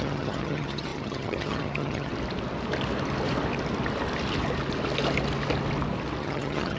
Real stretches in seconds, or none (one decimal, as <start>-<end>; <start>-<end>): 2.1-6.2